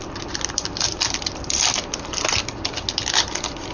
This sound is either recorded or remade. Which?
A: recorded